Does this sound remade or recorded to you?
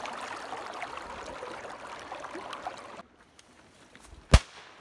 recorded